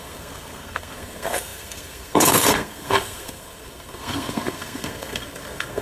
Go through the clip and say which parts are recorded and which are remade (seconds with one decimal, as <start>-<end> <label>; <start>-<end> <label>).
0.0-5.8 remade

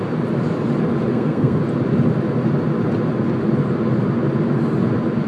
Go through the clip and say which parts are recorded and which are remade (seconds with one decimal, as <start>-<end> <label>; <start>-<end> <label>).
0.0-1.1 recorded; 1.1-1.6 remade; 1.6-5.3 recorded